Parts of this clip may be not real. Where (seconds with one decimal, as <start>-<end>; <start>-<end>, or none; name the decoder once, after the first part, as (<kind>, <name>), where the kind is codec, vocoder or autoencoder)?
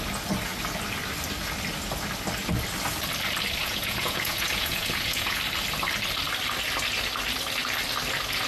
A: 3.6-5.4 (vocoder, Vocos)